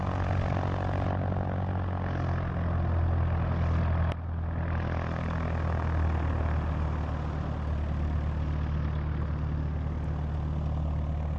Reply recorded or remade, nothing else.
recorded